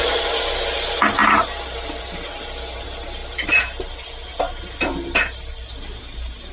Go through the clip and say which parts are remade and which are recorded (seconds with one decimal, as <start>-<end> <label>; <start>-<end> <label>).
0.0-6.5 recorded

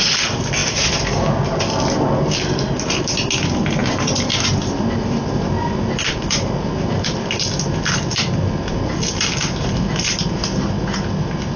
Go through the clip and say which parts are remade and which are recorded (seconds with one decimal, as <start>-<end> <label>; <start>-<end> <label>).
0.0-11.6 recorded

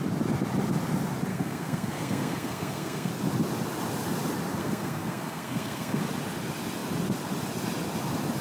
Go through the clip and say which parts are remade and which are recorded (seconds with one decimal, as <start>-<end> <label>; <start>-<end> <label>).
0.0-1.3 recorded; 1.3-3.1 remade; 3.1-4.6 recorded; 4.6-6.0 remade; 6.0-8.4 recorded

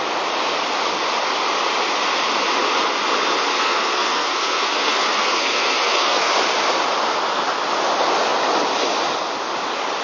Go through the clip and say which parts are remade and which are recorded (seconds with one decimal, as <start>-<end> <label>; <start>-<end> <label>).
0.0-3.5 recorded; 3.5-6.3 remade; 6.3-10.0 recorded